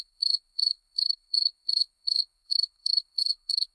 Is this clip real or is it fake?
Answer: fake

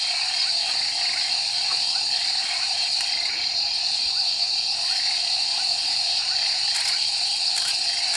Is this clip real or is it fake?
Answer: real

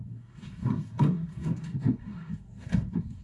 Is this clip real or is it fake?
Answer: fake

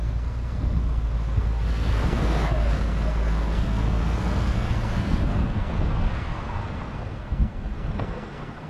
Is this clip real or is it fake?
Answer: fake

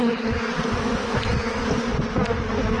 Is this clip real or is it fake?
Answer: real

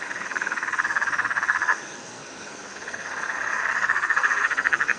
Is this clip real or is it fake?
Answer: fake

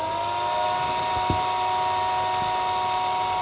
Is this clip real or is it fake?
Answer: real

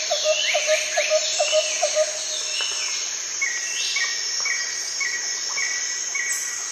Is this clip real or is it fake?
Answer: real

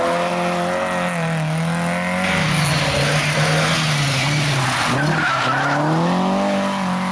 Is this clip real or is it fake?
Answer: real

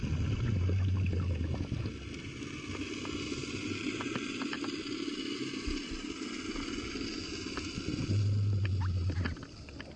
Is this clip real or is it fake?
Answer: real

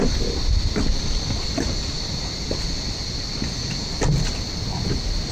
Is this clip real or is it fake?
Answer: real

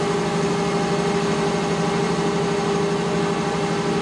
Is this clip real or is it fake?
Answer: real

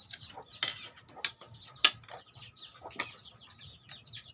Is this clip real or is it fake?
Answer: real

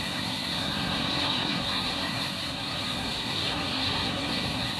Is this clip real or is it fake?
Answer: fake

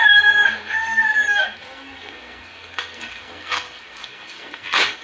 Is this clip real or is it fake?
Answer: fake